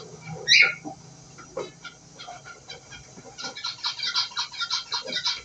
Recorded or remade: recorded